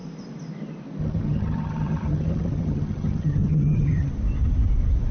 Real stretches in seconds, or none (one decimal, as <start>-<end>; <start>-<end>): 0.0-1.0; 4.1-5.1

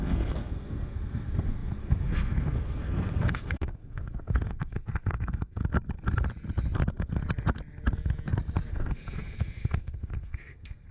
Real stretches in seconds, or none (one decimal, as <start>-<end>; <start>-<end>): 5.6-8.7

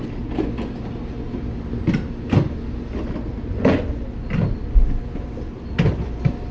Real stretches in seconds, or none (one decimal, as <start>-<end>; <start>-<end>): 0.0-3.3; 3.9-6.5

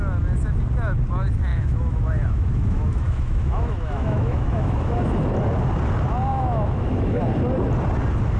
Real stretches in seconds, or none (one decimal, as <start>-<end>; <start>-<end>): 0.0-1.5; 5.0-6.3; 7.2-8.4

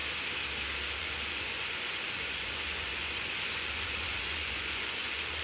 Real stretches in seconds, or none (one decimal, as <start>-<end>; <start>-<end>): 0.0-1.0

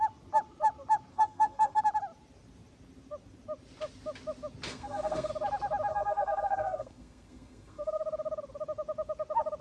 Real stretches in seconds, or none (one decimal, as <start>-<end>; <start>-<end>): 0.0-1.1; 1.8-4.7; 5.3-5.9; 8.0-9.6

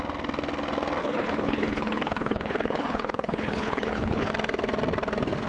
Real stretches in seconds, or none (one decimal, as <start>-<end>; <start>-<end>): 0.0-1.0; 4.3-5.5